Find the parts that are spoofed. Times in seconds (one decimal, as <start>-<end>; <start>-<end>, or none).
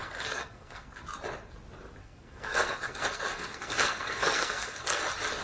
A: 0.0-1.0; 2.0-5.0